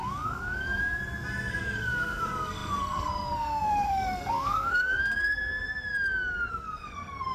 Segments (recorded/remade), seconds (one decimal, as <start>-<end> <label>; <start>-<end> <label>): 0.0-1.0 remade; 1.0-1.5 recorded; 1.5-5.4 remade; 5.4-6.5 recorded; 6.5-7.3 remade